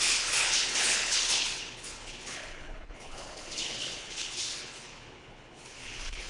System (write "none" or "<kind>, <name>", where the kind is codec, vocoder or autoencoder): codec, HILCodec